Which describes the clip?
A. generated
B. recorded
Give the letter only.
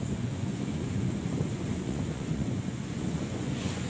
A